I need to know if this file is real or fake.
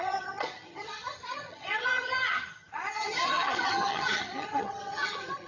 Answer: fake